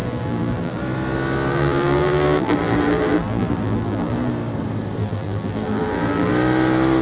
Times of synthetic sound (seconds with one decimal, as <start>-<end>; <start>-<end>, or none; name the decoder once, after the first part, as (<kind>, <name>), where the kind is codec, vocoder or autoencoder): 0.0-0.8 (vocoder, BigVGAN v2); 1.5-4.3; 5.0-6.3

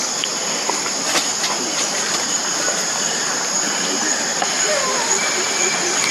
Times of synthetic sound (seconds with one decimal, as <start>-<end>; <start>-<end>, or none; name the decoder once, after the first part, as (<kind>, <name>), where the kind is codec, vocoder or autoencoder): 1.7-4.7 (vocoder, BigVGAN v2)

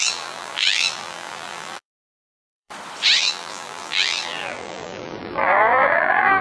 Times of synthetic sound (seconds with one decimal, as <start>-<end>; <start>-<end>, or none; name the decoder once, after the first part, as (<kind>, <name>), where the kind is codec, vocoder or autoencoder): 0.0-2.7 (vocoder, BigVGAN v2); 3.2-6.4

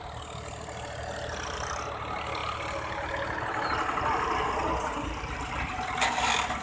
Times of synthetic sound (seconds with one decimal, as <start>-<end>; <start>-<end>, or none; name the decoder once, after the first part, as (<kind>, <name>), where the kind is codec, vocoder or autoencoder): 2.4-3.1 (vocoder, BigVGAN v2)

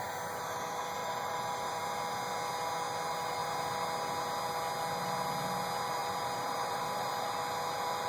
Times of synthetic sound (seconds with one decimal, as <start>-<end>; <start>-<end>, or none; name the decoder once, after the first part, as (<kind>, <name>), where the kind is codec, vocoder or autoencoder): 1.0-1.8 (vocoder, BigVGAN v2); 6.0-7.2